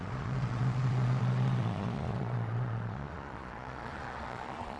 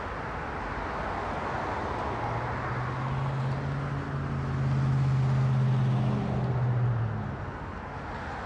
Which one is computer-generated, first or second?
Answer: first